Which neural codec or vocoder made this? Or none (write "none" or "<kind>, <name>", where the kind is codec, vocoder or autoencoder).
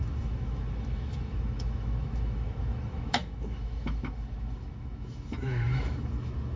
autoencoder, DAC-VAE